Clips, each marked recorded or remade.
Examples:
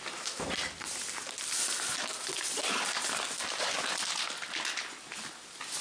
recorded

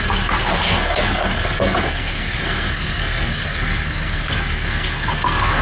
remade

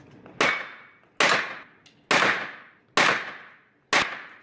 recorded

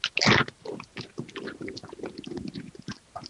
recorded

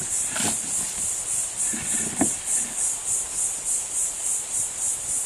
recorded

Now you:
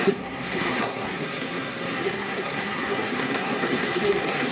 remade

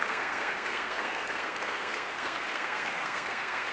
remade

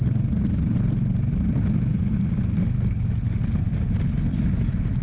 recorded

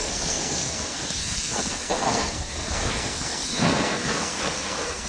remade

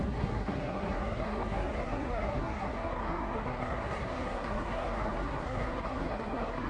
remade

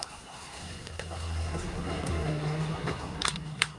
remade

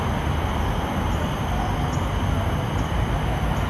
recorded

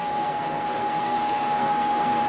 remade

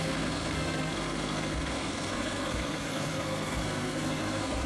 remade